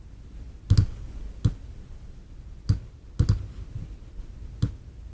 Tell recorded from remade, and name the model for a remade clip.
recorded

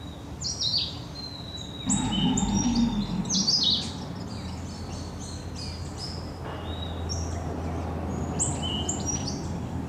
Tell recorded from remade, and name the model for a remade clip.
recorded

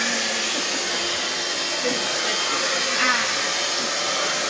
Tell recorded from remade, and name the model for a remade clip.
recorded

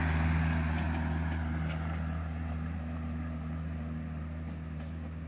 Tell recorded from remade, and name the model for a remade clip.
recorded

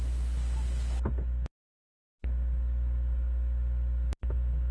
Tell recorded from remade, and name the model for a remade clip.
recorded